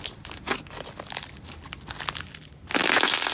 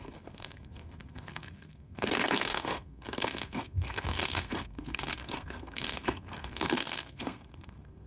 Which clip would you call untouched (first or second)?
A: first